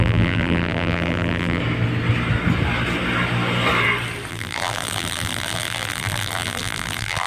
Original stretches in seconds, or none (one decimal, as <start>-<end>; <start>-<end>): 1.6-4.3